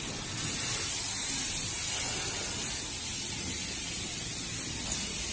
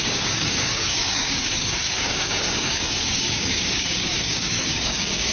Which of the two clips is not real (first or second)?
second